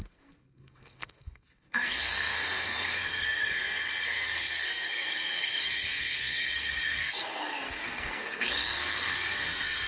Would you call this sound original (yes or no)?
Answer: no